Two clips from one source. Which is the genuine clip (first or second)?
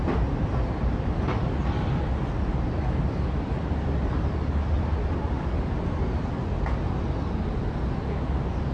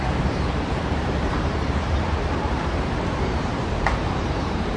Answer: first